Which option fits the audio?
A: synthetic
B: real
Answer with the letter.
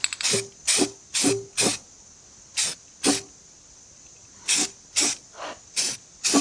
B